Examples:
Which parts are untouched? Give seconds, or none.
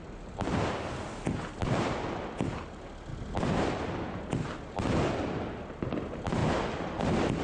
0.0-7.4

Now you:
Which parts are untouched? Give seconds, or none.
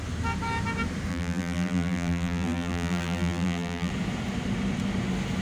0.0-1.1; 3.9-5.4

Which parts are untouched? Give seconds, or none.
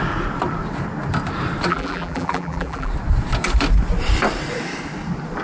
0.0-1.7; 2.9-5.4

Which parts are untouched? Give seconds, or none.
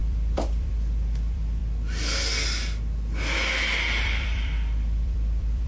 1.6-4.0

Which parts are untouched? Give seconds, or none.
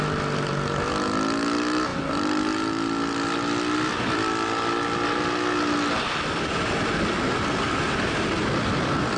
0.0-9.2